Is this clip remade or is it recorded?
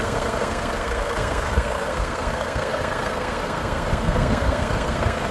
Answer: remade